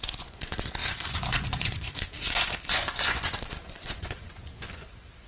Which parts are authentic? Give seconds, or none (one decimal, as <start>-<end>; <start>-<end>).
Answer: none